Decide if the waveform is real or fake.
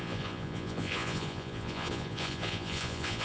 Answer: fake